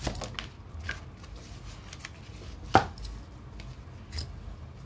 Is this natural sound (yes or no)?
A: yes